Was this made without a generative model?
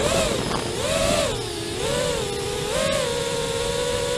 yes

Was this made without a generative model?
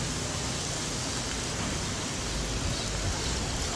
yes